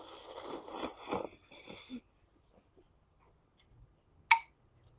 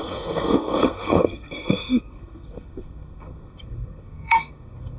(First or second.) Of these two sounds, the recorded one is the first